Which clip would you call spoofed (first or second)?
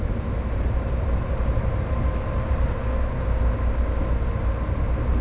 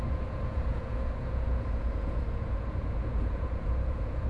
second